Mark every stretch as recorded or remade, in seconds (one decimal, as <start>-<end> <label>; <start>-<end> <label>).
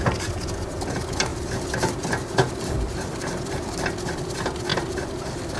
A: 0.0-1.3 recorded; 1.3-3.4 remade; 3.4-4.7 recorded; 4.7-5.6 remade